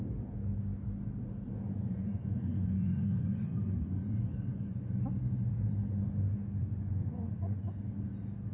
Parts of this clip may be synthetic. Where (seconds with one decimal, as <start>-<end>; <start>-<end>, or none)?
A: 1.8-4.9; 6.6-7.6